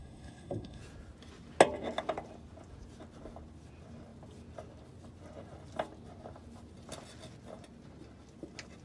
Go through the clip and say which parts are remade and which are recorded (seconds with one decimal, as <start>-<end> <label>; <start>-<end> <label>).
0.0-0.8 remade; 0.8-8.8 recorded